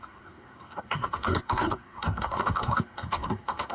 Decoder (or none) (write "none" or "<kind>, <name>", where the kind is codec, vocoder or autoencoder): codec, SNAC